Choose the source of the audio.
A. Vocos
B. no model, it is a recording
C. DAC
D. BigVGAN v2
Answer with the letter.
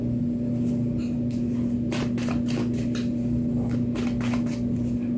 B